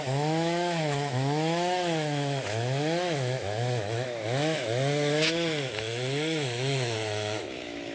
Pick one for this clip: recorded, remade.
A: remade